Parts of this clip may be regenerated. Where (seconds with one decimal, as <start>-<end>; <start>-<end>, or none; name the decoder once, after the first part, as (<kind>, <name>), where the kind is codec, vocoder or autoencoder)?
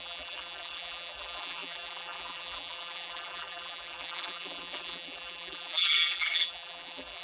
0.0-7.2 (vocoder, BigVGAN v2)